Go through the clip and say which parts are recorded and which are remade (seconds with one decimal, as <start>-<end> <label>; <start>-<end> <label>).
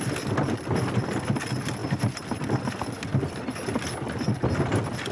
0.0-5.1 recorded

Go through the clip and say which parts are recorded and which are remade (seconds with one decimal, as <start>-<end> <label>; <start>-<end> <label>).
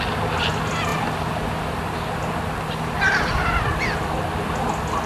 0.0-5.1 recorded